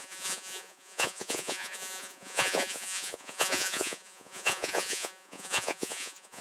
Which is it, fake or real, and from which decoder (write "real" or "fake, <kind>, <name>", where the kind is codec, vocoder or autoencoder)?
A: fake, vocoder, Vocos